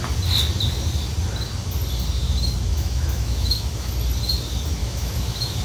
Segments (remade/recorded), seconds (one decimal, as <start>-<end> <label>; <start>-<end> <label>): 0.0-2.7 recorded; 2.7-3.9 remade; 3.9-4.8 recorded; 4.8-5.6 remade